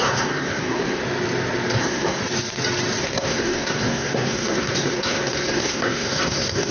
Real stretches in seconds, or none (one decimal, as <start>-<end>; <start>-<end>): 1.0-1.8; 2.2-3.0